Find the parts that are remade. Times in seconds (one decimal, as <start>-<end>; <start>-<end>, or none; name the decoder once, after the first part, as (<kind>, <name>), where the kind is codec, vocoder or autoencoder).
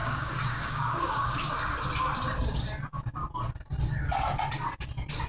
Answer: 0.0-1.5 (codec, DAC)